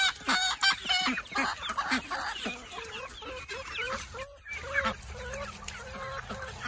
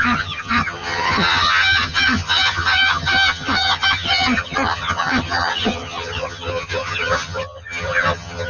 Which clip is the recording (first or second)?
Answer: first